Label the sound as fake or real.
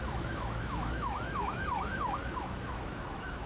fake